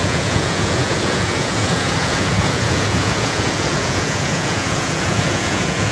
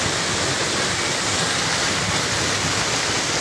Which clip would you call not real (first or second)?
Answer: first